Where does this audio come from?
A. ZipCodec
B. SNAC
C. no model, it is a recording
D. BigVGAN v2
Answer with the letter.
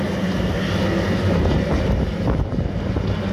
C